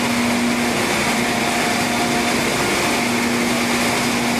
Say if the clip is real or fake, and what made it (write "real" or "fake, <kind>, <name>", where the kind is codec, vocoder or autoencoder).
real